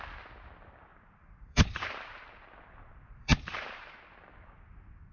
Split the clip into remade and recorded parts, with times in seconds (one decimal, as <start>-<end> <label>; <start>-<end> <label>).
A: 0.0-0.9 recorded; 0.9-4.0 remade; 4.0-5.1 recorded